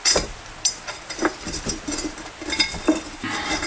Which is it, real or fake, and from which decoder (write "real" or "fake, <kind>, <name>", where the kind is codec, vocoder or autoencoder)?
real